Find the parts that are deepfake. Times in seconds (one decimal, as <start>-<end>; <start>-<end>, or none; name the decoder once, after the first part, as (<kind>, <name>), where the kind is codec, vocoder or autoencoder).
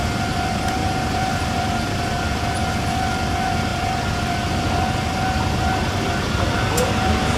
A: 0.8-1.3 (vocoder, BigVGAN v2)